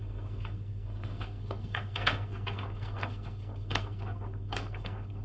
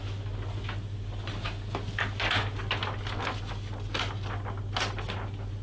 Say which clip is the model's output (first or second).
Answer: first